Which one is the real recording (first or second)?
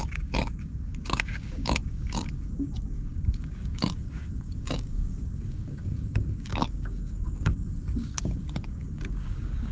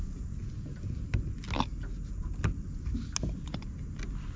second